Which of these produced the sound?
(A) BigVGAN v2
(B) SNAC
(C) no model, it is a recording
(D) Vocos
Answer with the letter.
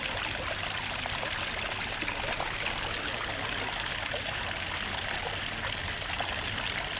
C